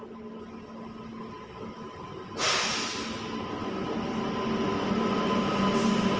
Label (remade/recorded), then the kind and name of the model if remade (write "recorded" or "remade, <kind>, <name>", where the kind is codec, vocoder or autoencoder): recorded